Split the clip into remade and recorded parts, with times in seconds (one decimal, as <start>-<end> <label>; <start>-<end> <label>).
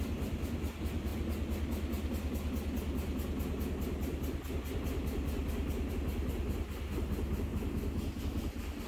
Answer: 0.0-8.9 recorded